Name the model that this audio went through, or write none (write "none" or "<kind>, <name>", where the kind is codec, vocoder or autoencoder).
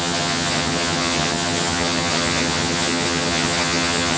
vocoder, HiFi-GAN